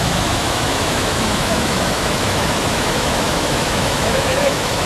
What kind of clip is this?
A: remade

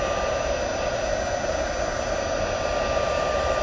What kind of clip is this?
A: recorded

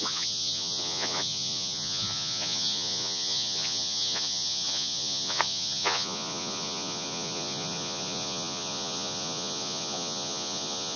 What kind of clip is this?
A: remade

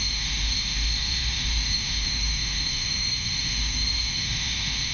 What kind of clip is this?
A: remade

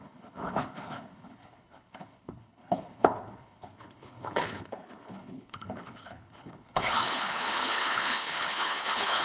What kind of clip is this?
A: remade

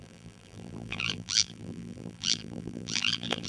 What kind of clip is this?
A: remade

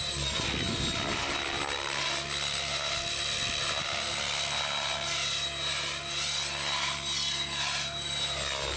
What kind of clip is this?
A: recorded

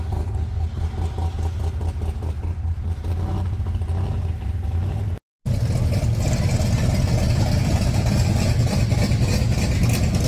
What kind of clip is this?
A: recorded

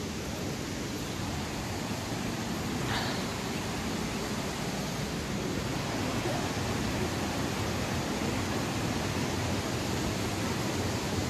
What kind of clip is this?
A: recorded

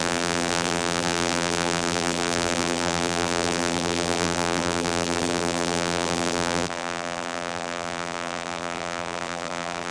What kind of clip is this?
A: remade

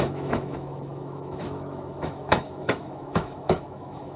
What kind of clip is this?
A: remade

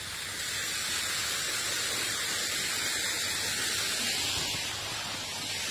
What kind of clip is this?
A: recorded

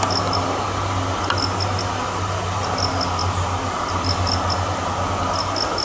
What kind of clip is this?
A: recorded